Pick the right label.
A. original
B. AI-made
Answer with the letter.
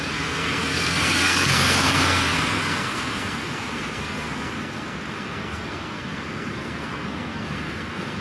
B